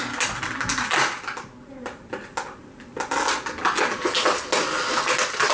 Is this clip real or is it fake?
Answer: real